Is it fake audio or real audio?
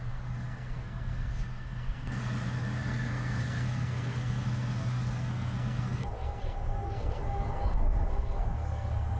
fake